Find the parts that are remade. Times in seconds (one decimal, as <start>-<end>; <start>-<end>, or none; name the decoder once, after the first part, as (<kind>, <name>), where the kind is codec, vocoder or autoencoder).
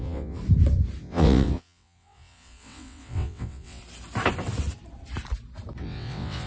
0.0-0.4 (vocoder, WaveNeXt); 1.0-3.8; 5.8-6.5